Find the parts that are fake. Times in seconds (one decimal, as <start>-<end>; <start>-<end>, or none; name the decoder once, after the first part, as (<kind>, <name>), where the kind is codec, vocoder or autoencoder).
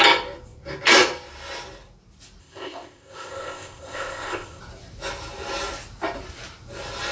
2.4-4.6 (codec, ZipCodec)